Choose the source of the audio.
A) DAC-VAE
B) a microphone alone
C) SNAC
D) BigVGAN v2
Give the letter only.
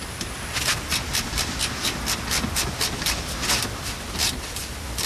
B